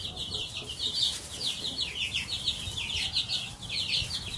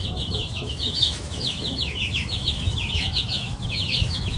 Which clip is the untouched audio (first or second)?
first